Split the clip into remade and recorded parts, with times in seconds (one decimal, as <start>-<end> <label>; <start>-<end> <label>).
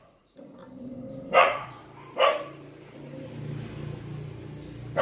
0.0-0.6 remade; 0.6-1.4 recorded; 1.4-1.8 remade; 1.8-5.0 recorded